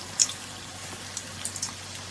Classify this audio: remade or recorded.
recorded